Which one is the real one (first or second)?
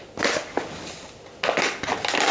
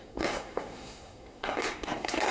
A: first